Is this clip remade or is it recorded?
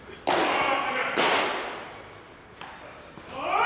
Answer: recorded